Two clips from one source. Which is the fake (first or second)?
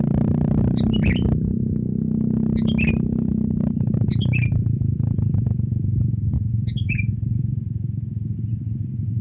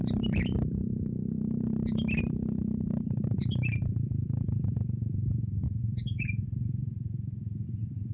second